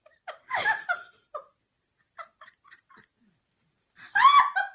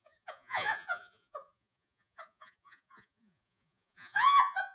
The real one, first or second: first